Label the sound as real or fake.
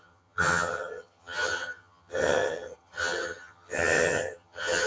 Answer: fake